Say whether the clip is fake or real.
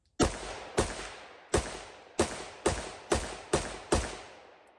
real